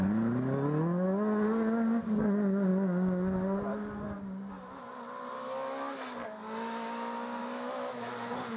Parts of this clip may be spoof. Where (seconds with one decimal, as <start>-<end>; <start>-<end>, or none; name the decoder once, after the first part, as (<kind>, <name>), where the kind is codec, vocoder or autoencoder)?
7.4-8.0 (autoencoder, DAC-VAE)

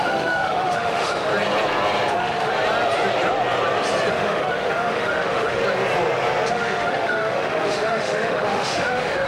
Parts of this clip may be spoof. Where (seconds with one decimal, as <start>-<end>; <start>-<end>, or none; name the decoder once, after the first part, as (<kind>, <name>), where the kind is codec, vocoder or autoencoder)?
0.0-1.3 (autoencoder, DAC-VAE); 2.1-2.5; 4.1-5.6; 6.5-9.3